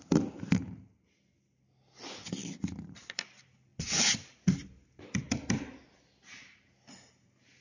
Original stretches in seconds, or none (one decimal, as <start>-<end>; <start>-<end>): 0.0-7.6